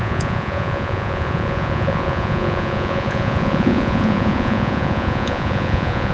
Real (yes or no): no